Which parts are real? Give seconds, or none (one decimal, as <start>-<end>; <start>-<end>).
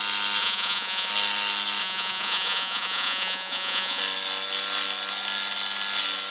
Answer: 0.0-0.4; 1.1-1.8; 4.0-6.3